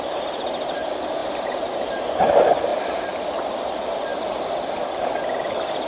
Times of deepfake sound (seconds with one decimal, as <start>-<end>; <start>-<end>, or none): 4.1-5.9